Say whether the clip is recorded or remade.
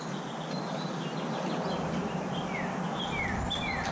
recorded